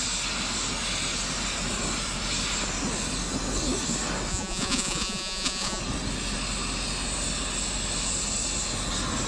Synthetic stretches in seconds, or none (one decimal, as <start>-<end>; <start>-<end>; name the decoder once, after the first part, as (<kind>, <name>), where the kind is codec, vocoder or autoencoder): 4.3-5.8 (vocoder, Vocos)